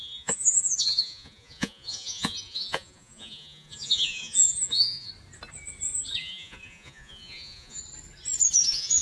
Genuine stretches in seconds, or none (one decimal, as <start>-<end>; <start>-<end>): 5.1-6.2; 7.8-8.6